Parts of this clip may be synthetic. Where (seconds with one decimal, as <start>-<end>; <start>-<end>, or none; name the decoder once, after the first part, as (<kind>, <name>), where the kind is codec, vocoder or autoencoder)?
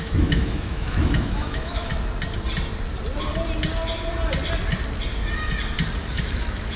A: 0.0-1.9 (autoencoder, DAC-VAE); 6.0-6.8